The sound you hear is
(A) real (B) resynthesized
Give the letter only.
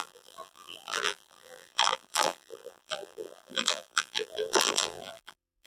B